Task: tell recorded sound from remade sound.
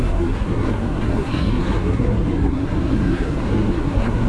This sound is remade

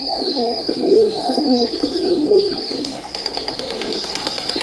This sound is remade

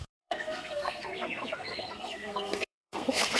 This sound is remade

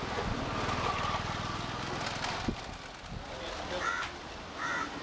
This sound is recorded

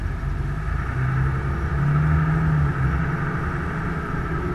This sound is recorded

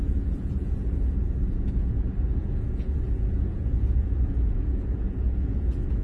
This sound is remade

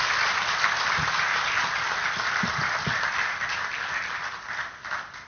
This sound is recorded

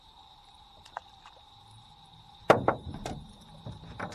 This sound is remade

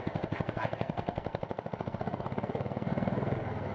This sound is remade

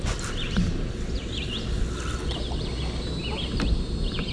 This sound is recorded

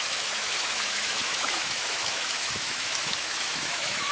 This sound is remade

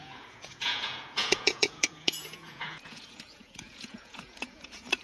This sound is remade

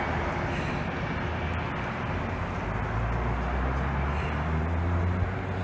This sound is recorded